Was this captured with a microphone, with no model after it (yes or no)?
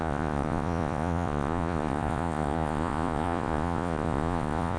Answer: no